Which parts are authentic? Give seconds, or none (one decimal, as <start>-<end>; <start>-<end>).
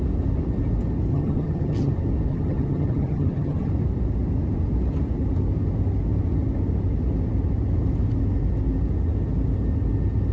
0.0-1.1; 1.9-2.3; 3.7-10.3